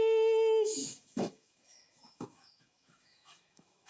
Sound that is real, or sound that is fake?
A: fake